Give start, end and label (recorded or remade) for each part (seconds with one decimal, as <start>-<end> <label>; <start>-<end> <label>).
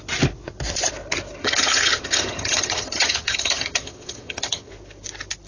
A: 0.0-1.4 recorded; 1.4-4.7 remade; 4.7-5.5 recorded